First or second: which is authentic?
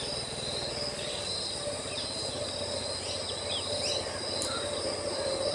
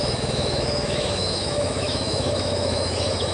first